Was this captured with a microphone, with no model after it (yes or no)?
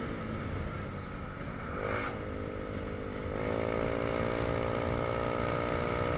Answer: yes